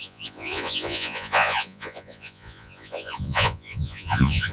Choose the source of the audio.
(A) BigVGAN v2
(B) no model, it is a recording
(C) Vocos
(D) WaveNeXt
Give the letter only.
C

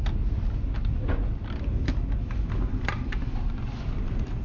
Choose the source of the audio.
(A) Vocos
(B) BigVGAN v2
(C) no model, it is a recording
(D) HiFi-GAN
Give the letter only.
C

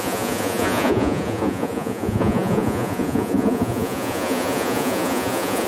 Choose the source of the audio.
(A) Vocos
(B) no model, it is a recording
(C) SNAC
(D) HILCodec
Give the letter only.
A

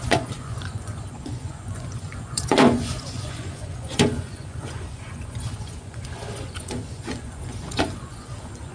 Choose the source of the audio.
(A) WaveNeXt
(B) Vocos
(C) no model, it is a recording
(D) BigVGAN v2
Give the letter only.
B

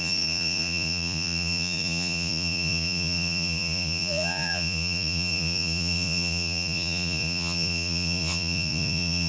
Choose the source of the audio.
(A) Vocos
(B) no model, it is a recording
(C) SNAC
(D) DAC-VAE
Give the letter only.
A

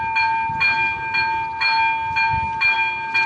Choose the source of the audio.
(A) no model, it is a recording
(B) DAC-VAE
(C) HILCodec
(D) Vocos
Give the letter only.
A